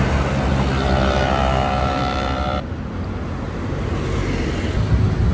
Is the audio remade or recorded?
recorded